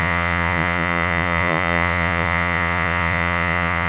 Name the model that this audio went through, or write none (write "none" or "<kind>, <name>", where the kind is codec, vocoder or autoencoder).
vocoder, Vocos